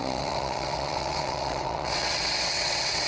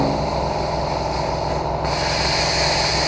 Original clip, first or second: second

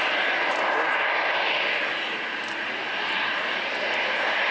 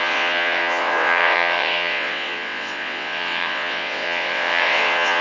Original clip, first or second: first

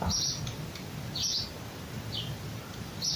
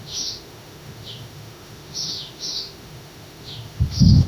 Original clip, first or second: first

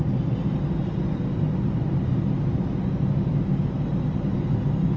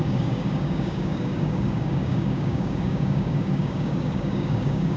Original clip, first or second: first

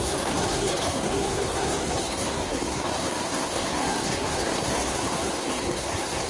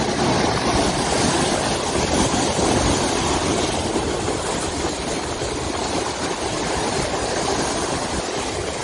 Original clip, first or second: second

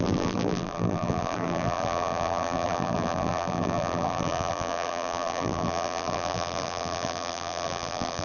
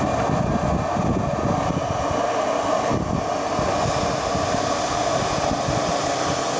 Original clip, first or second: second